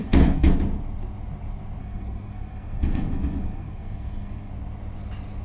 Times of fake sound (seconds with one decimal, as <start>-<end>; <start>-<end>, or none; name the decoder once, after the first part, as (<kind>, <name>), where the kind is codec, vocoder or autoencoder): 0.0-0.5 (codec, SNAC); 1.8-4.5